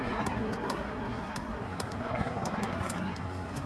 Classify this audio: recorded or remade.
remade